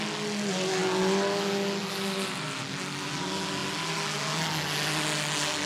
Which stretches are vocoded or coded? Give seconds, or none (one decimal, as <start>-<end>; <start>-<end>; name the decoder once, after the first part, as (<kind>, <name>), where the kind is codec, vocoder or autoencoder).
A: none